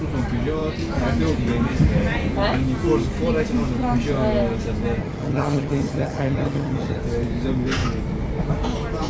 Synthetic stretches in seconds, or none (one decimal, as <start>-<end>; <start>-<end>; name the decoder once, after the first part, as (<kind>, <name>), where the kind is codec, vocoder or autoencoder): 5.0-7.0 (vocoder, HiFi-GAN)